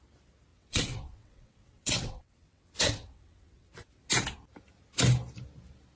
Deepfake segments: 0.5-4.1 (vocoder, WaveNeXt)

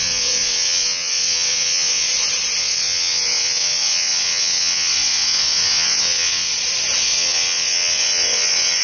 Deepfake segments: 0.0-2.1 (vocoder, WaveNeXt); 2.6-6.5; 7.0-8.8

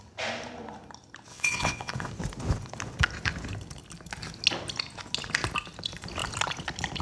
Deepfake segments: 1.3-2.1 (vocoder, WaveNeXt)

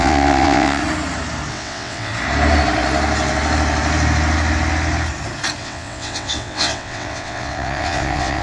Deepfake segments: 0.0-0.8 (vocoder, WaveNeXt); 1.5-2.1; 5.6-8.4

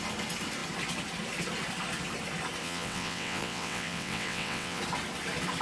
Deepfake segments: 2.6-4.8 (vocoder, WaveNeXt)

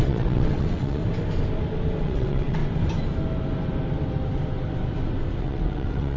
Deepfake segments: 0.0-1.0 (vocoder, WaveNeXt); 2.0-2.6; 5.4-6.2